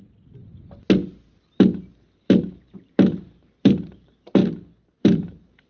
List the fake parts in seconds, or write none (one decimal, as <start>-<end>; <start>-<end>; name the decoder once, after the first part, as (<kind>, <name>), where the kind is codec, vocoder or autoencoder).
0.0-0.6 (vocoder, BigVGAN v2); 2.4-4.4; 5.0-5.7